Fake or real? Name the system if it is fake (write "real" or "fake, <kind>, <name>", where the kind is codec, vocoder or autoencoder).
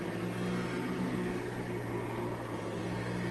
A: real